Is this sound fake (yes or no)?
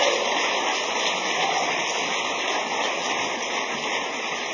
no